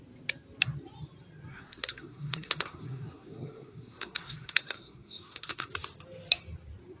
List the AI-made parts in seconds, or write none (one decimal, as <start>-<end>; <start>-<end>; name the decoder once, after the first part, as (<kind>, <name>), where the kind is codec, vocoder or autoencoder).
1.5-5.7 (codec, SNAC)